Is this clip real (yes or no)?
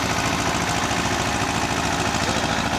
yes